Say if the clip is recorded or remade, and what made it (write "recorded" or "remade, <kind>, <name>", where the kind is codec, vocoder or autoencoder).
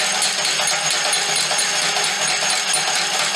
recorded